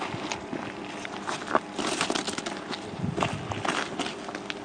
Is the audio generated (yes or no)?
no